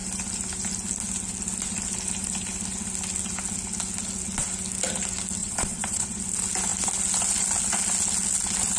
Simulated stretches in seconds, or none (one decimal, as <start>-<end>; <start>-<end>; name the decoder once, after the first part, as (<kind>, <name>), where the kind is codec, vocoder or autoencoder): 5.4-6.2 (vocoder, Vocos)